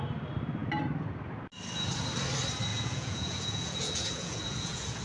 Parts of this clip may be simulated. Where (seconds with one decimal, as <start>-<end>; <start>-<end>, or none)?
2.7-5.0